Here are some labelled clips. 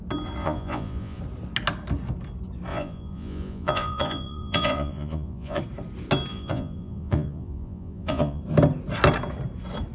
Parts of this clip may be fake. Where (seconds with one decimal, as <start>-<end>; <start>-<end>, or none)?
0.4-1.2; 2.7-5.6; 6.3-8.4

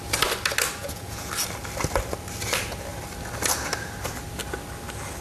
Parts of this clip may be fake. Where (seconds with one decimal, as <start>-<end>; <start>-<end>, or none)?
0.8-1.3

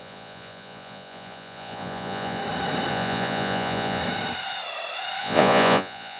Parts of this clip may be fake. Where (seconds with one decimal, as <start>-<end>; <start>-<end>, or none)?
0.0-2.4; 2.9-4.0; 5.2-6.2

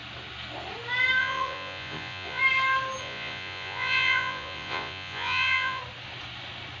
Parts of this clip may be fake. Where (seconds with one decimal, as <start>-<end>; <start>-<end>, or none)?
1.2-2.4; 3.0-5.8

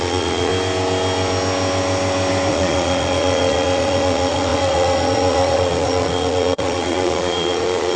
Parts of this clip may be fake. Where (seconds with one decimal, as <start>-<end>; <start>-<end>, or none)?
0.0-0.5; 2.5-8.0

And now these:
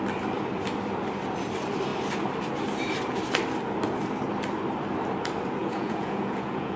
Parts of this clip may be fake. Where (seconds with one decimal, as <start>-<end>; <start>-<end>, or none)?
5.6-6.8

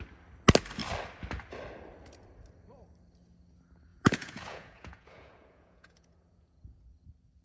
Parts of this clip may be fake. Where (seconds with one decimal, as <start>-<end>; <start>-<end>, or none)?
3.9-6.8